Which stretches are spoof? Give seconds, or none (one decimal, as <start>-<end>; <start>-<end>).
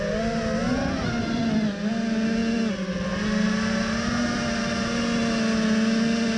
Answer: none